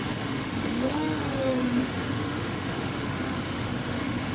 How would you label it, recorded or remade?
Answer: remade